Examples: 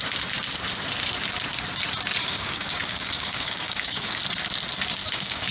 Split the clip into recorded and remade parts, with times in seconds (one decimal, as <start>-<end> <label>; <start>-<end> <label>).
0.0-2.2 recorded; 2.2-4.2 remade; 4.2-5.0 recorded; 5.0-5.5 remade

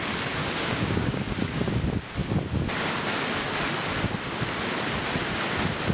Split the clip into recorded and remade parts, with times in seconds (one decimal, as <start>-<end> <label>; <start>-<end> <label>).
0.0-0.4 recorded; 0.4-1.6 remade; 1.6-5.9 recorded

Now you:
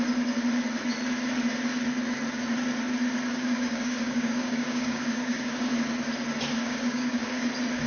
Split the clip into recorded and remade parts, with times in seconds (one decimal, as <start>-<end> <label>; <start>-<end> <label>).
0.0-3.3 recorded; 3.3-5.7 remade; 5.7-6.6 recorded; 6.6-7.5 remade; 7.5-7.9 recorded

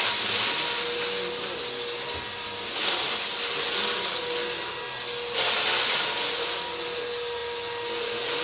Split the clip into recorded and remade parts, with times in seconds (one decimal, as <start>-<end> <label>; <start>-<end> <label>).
0.0-8.4 recorded

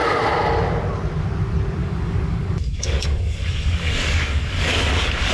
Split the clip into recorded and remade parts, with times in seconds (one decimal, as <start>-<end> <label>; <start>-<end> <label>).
0.0-1.8 recorded; 1.8-5.3 remade

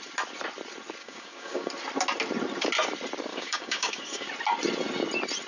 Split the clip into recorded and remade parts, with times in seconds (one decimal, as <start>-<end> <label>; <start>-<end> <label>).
0.0-1.0 recorded; 1.0-1.7 remade; 1.7-3.3 recorded; 3.3-4.3 remade; 4.3-5.5 recorded